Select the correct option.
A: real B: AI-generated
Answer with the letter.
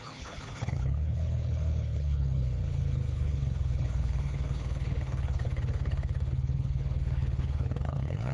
B